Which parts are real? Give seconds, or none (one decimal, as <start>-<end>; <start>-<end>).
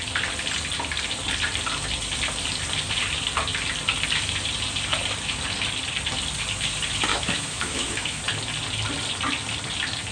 0.0-7.1; 8.2-10.1